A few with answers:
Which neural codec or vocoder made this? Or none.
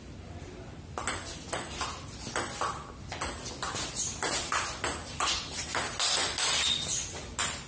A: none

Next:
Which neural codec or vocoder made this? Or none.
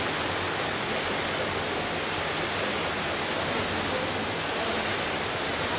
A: none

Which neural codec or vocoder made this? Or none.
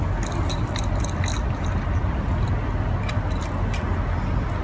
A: none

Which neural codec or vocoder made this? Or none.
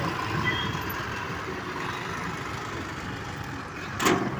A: none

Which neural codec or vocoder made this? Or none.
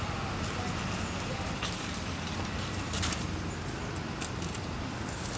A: none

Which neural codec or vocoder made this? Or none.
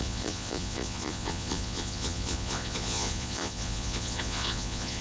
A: vocoder, Vocos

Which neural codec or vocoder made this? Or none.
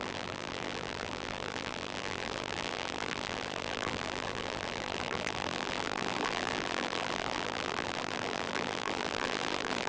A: vocoder, BigVGAN v2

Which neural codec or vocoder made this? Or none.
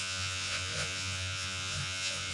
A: vocoder, Vocos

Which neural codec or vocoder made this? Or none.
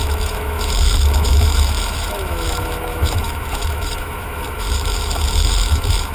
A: autoencoder, DAC-VAE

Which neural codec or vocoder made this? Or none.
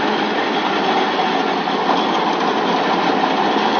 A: none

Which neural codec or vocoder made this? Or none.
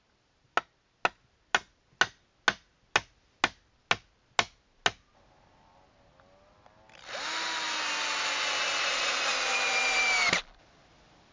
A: none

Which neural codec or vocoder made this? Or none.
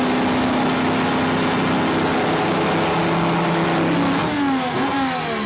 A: none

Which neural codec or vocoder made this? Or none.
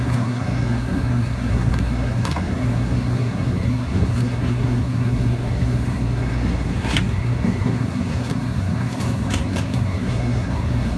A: codec, SNAC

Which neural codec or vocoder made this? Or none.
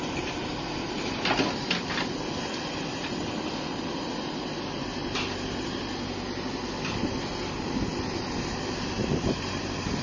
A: none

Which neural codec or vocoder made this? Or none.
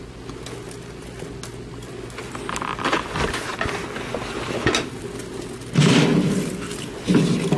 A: none